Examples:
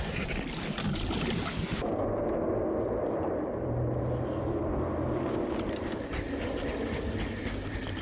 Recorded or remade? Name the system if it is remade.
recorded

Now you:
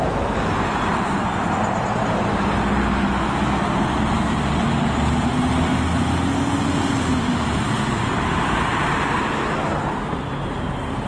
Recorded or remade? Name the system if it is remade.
recorded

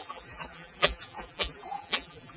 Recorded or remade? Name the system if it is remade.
remade, vocoder, BigVGAN v2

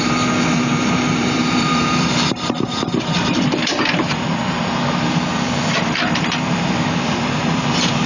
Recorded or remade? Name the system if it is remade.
remade, vocoder, BigVGAN v2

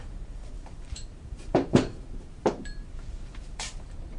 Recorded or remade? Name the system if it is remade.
remade, vocoder, BigVGAN v2